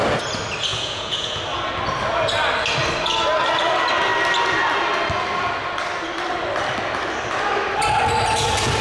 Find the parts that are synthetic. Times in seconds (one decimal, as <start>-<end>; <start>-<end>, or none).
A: 0.7-1.4